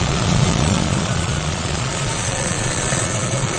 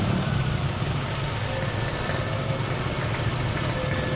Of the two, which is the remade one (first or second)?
first